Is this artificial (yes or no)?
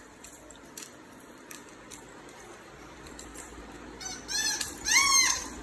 yes